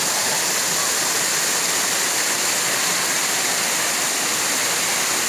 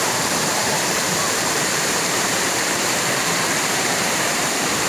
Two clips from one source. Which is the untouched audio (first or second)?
first